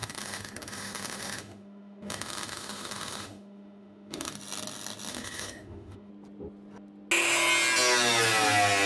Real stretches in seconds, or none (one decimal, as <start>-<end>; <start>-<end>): 4.3-5.1; 6.1-8.9